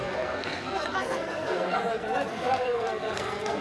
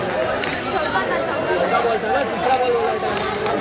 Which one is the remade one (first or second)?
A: first